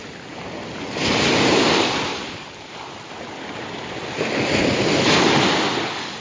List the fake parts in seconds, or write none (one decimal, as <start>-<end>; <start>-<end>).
2.1-2.7

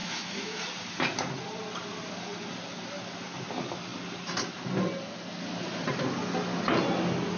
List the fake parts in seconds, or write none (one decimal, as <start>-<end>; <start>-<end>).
0.0-0.6

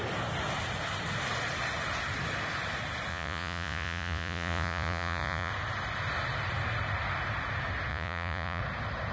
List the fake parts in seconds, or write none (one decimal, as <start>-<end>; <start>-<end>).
3.1-5.5; 7.9-8.6

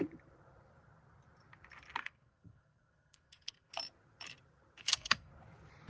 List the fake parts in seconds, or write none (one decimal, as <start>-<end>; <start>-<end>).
2.0-3.7; 4.8-5.3

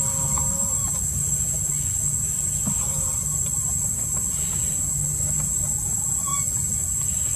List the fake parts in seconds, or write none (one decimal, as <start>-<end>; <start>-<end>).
none

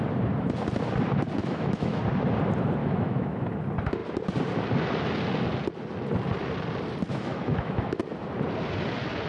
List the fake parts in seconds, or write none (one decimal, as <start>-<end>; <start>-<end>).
1.4-2.0; 2.8-3.5; 7.1-8.0